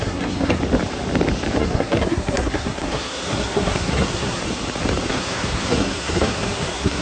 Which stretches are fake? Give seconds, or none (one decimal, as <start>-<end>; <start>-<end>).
0.0-0.6; 1.6-4.4; 5.1-7.0